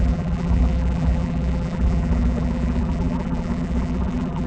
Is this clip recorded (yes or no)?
no